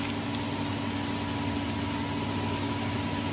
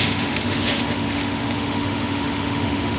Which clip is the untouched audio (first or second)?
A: first